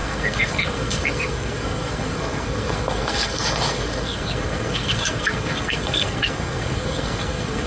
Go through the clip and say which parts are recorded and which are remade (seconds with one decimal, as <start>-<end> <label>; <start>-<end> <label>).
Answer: 0.0-7.7 remade

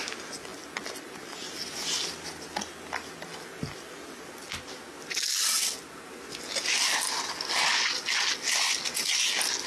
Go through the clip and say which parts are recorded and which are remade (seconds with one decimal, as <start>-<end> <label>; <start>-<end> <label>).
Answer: 0.0-9.7 recorded

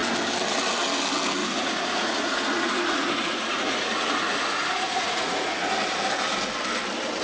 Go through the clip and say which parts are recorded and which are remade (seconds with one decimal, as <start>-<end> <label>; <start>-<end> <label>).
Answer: 0.0-1.4 recorded; 1.4-5.7 remade; 5.7-7.2 recorded

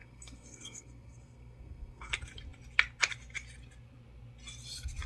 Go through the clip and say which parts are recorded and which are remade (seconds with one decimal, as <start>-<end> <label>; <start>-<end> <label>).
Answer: 0.0-2.1 remade; 2.1-5.1 recorded